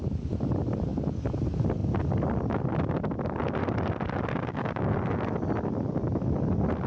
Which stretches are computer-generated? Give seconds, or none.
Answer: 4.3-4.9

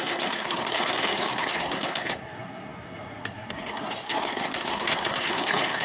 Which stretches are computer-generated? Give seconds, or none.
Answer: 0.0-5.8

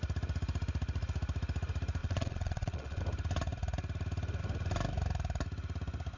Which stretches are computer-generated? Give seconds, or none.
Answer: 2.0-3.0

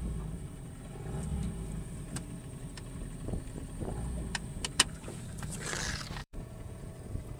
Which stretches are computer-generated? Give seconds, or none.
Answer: 6.2-6.9